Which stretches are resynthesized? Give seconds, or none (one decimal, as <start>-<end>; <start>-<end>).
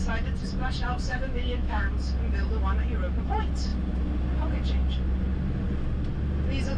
0.9-1.9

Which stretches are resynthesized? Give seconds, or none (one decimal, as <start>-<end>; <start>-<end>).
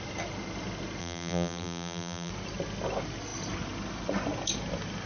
1.0-2.3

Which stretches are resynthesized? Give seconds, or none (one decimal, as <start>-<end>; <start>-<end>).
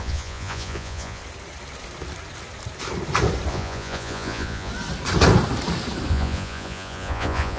0.0-1.2; 3.5-4.7; 6.1-7.6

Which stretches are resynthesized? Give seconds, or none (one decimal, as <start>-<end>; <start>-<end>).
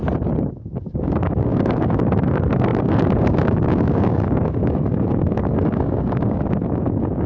0.5-7.3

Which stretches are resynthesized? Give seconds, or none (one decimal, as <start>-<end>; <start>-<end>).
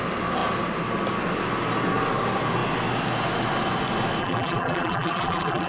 4.2-5.7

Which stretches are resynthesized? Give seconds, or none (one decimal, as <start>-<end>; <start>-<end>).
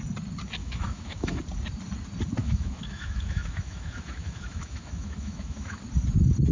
0.6-1.4; 2.4-5.8